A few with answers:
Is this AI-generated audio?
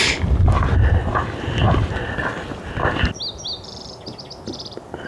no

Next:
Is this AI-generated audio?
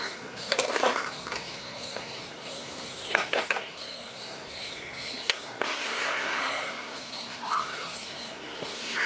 yes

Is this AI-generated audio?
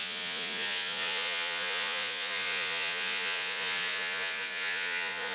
yes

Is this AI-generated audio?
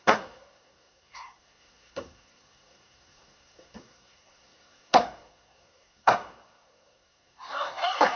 yes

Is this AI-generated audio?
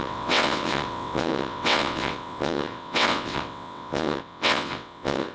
yes